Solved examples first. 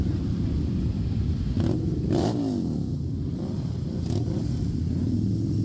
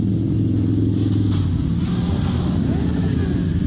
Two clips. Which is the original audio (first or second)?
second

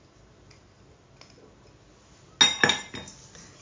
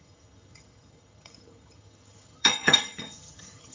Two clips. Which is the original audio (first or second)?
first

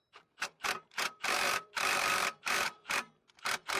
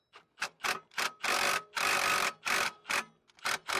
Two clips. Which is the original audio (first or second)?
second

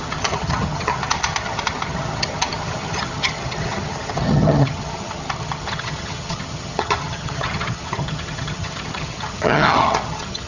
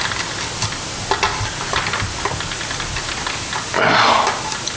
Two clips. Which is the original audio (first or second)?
second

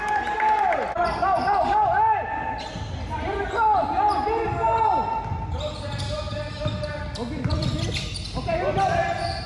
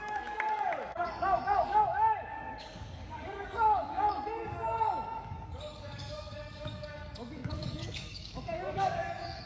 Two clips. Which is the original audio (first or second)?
first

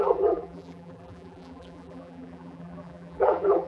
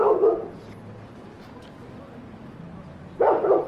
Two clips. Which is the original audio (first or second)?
second